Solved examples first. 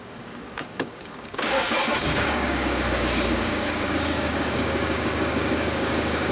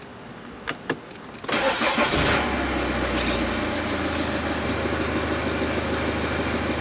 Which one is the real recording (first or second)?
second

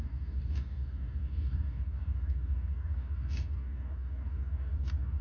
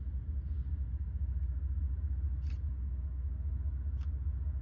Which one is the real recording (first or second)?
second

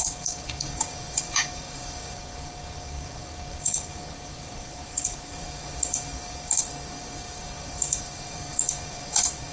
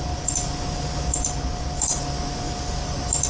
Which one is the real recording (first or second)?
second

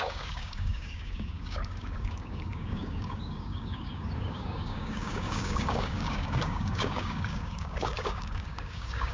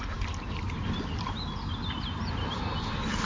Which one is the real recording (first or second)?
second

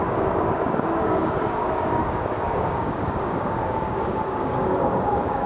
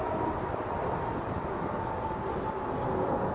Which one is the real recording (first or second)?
second